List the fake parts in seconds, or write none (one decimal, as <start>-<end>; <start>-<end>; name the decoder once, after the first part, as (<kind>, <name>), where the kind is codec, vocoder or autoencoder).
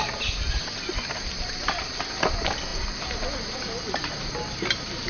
none